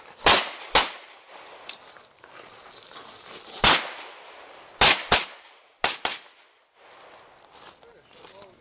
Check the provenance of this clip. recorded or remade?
recorded